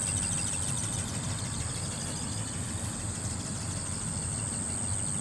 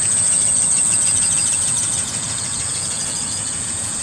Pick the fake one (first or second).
second